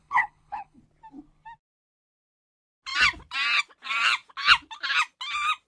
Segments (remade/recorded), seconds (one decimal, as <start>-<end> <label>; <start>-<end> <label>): 0.0-0.8 remade; 0.8-5.7 recorded